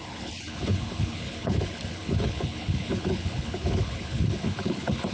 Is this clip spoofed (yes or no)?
yes